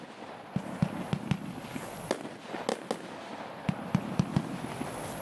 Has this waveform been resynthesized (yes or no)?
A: no